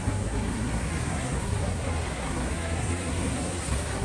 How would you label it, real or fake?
fake